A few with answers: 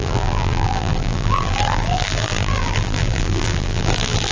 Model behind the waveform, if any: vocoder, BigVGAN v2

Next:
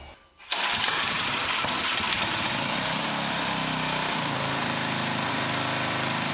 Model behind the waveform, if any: vocoder, BigVGAN v2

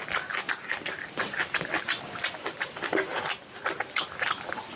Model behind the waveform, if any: none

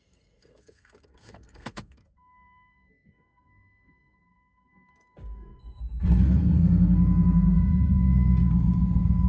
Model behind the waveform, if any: codec, SNAC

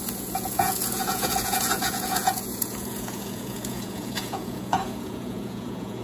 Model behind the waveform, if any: vocoder, Vocos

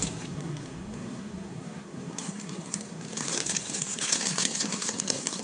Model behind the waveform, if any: codec, SNAC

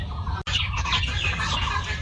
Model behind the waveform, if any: none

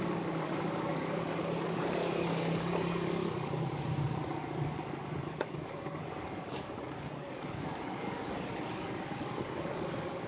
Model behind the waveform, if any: codec, DAC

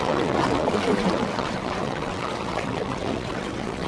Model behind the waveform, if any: vocoder, WaveNeXt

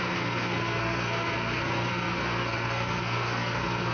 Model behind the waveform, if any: codec, SNAC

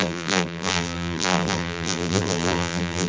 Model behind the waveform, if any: vocoder, BigVGAN v2